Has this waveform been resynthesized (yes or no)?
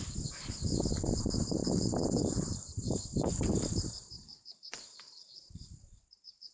yes